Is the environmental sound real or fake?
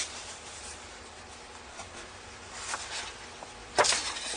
real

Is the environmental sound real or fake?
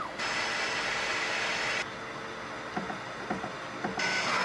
real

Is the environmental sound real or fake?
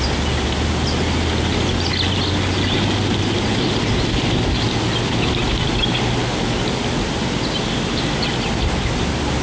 real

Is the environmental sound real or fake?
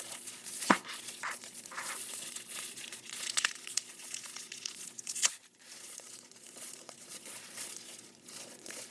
fake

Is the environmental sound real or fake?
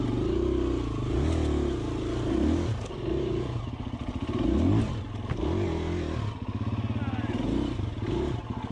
real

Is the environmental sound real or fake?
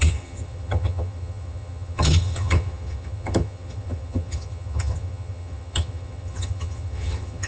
fake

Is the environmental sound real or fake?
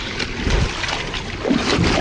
real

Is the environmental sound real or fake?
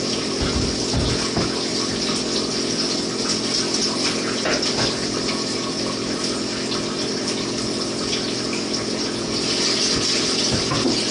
real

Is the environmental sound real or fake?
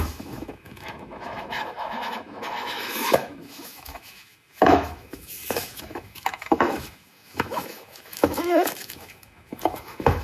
fake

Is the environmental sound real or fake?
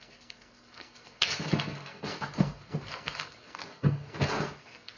fake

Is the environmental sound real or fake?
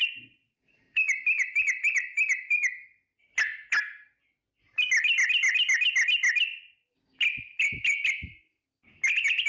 real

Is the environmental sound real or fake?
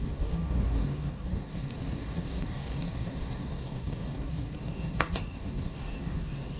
fake